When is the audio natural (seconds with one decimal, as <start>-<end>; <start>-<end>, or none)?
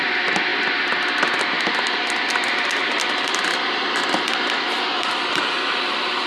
0.0-2.8